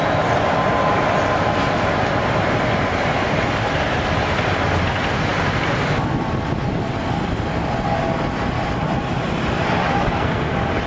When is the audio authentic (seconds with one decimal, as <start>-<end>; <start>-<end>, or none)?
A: 0.0-9.9; 10.5-10.9